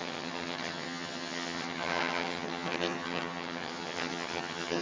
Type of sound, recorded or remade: remade